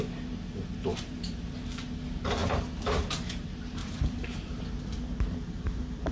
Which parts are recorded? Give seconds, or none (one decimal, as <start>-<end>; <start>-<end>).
0.0-0.9; 1.7-2.4; 3.4-3.8; 4.6-6.1